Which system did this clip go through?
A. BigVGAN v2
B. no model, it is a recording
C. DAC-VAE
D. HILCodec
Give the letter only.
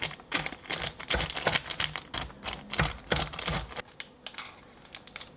B